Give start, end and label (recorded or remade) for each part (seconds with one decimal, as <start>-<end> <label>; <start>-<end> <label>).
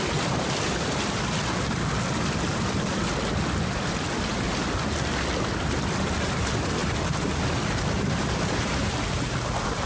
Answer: 0.0-9.9 recorded